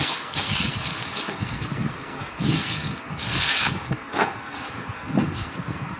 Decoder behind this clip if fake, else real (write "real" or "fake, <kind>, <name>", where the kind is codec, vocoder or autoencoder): fake, codec, SNAC